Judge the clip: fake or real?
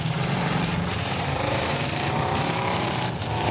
fake